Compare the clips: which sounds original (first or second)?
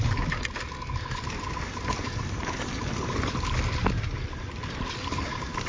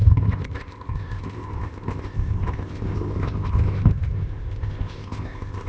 first